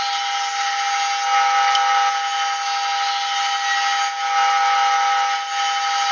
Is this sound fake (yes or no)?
no